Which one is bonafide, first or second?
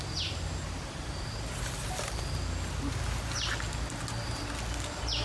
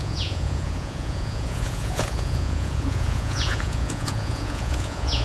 first